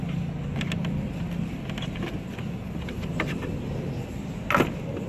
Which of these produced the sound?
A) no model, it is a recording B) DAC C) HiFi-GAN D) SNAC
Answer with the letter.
A